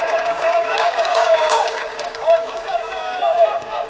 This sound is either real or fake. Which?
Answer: fake